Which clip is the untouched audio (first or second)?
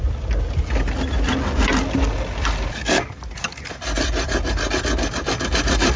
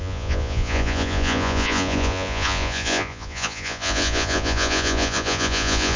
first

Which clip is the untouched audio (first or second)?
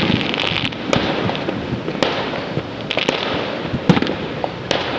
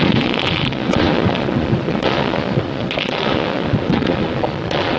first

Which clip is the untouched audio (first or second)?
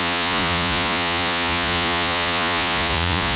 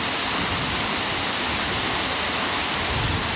second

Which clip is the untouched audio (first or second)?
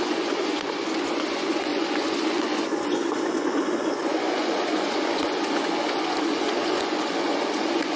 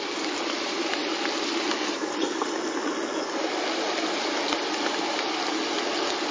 second